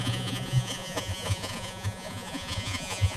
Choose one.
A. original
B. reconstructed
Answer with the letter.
B